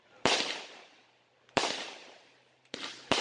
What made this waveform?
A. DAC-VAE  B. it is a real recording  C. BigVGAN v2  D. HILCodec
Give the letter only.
C